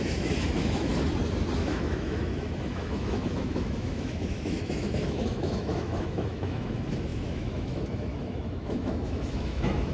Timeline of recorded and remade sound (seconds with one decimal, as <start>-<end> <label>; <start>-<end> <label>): 0.0-0.9 remade; 0.9-1.6 recorded; 1.6-9.9 remade